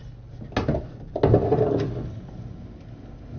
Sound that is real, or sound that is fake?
real